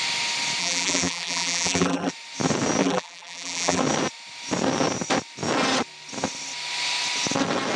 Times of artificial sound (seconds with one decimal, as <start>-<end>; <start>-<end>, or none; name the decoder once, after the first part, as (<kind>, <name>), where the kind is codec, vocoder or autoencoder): 0.6-2.1 (vocoder, BigVGAN v2); 2.8-3.8